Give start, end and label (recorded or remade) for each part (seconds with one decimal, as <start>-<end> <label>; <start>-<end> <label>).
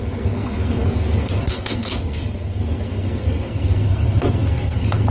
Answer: 0.0-5.1 remade